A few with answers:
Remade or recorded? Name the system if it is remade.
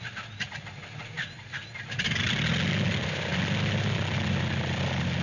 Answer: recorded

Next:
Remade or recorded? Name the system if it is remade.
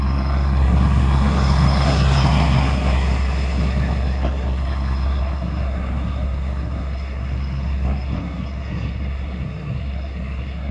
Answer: remade, codec, SNAC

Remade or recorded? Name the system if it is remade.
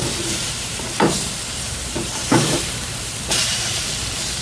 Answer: remade, vocoder, BigVGAN v2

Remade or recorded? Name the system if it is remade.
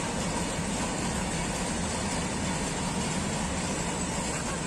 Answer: recorded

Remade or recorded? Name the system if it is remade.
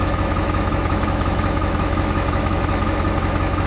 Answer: remade, autoencoder, DAC-VAE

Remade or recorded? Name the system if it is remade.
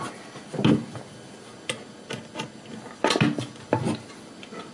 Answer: recorded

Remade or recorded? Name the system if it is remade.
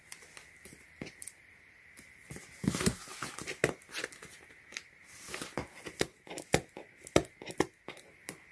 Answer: recorded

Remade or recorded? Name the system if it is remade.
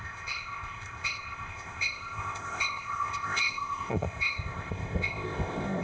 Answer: remade, codec, ZipCodec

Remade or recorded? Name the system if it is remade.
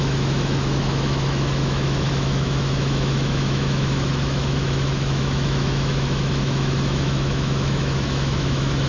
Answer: remade, autoencoder, DAC-VAE